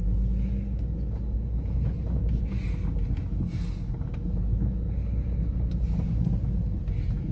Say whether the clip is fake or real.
real